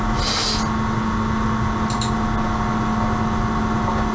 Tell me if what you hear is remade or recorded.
recorded